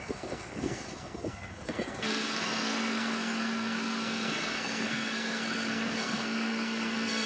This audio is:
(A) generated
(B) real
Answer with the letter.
A